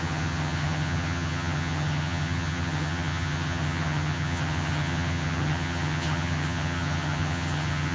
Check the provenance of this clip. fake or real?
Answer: fake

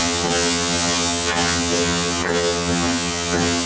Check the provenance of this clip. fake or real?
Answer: fake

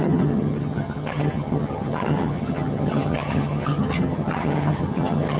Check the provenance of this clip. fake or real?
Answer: fake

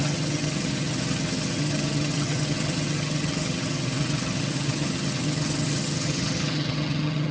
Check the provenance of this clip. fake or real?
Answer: fake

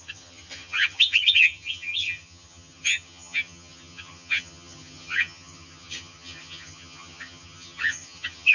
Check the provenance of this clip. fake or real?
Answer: fake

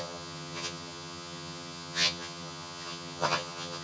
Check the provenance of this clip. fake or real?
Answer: fake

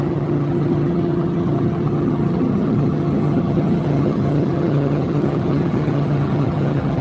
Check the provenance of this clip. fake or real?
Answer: fake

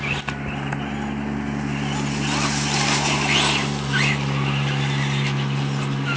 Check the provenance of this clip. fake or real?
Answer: real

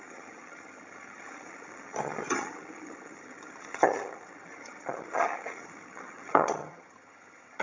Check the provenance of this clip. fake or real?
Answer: fake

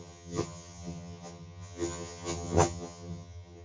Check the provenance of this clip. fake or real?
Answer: fake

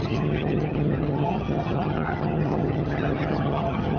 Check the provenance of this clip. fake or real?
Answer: fake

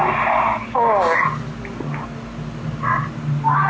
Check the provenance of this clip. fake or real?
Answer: real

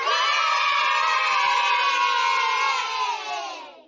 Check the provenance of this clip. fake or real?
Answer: real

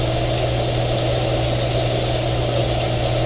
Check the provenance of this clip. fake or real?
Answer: real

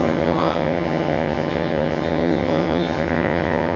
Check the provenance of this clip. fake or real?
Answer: fake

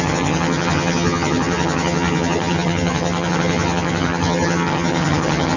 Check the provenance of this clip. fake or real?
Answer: fake